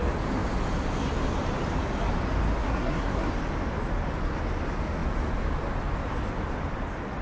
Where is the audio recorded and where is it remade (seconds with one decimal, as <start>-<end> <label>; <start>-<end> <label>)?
0.0-2.6 recorded; 2.6-3.3 remade; 3.3-7.2 recorded